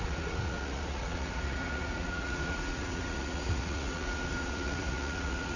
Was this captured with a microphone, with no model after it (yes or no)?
no